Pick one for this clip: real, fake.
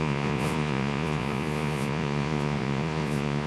fake